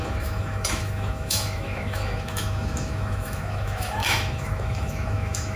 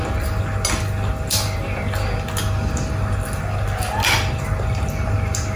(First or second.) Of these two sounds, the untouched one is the second